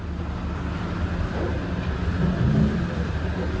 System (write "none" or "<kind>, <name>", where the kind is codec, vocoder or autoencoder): none